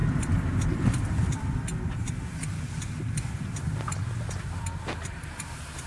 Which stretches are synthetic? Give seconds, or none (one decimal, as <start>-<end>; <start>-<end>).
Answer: 0.0-1.7; 5.2-5.9